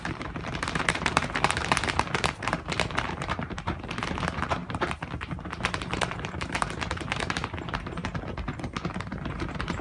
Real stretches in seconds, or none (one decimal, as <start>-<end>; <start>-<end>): 8.0-8.6